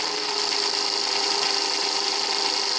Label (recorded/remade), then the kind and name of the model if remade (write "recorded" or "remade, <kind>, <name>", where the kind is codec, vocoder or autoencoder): recorded